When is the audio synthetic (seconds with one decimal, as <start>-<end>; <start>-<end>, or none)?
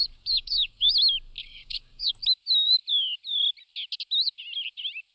0.0-0.9; 1.4-2.1